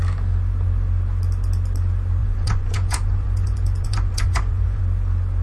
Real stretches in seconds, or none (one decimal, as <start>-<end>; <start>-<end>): 0.0-2.2; 4.8-5.4